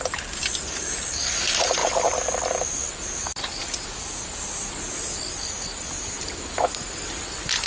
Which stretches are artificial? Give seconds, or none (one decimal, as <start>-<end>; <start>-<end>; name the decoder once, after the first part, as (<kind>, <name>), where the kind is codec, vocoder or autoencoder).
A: 1.8-2.3 (vocoder, BigVGAN v2); 3.6-4.6